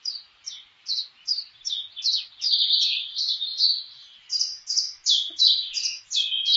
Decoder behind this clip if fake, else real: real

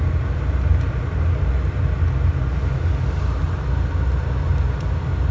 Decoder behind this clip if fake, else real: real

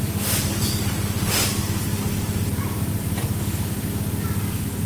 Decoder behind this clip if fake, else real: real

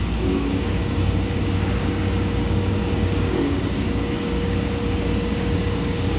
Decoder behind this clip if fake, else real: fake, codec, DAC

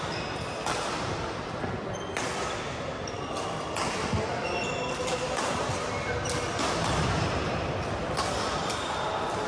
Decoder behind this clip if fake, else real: real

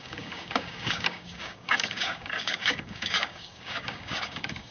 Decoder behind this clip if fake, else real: fake, codec, DAC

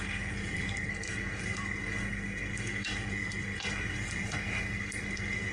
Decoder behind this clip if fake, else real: fake, codec, SNAC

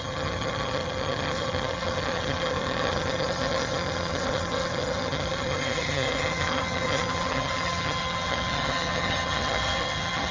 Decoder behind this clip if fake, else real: fake, vocoder, HiFi-GAN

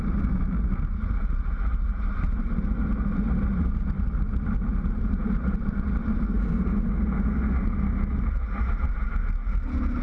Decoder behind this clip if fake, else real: real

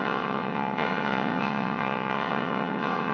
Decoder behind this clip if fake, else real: fake, vocoder, WaveNeXt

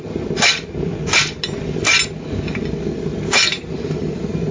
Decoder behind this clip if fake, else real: real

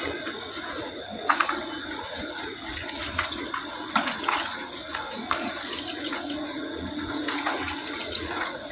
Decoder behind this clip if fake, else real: fake, vocoder, Vocos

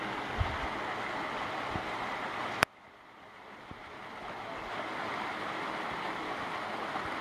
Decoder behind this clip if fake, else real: real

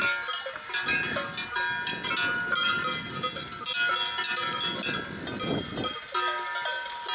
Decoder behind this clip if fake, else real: real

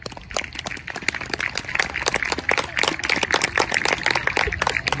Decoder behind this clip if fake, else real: real